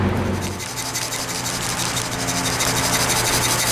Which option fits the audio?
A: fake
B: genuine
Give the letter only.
B